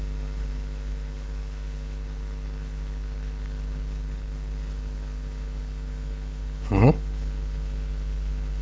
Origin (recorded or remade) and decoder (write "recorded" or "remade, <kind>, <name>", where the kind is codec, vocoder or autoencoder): remade, codec, HILCodec